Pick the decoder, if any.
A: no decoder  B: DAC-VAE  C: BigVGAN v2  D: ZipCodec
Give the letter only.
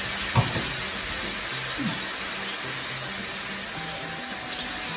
A